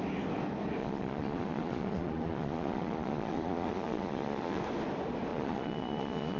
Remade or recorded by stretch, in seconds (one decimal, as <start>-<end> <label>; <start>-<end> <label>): 0.0-0.8 recorded; 0.8-4.6 remade; 4.6-5.3 recorded; 5.3-6.4 remade